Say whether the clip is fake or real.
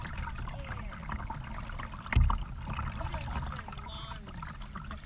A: real